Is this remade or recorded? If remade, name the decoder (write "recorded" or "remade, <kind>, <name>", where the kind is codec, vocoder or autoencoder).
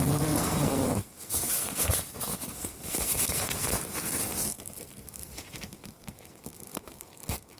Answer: remade, codec, SNAC